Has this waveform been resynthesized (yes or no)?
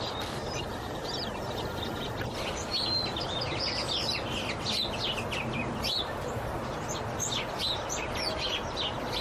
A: no